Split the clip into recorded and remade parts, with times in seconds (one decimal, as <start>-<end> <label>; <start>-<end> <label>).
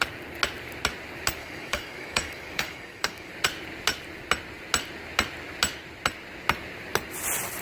0.0-1.4 recorded; 1.4-3.3 remade; 3.3-7.6 recorded